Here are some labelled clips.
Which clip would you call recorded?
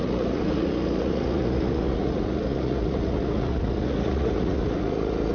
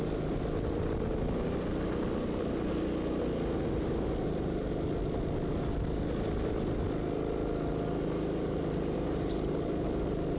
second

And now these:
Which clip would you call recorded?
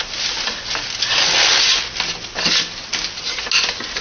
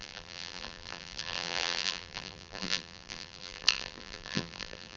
first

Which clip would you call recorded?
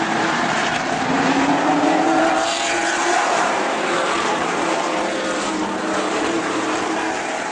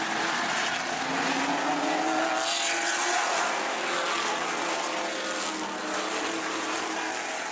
second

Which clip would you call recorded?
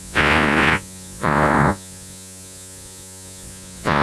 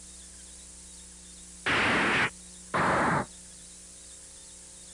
second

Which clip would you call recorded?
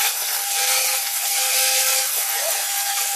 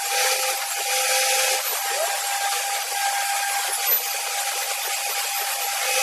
second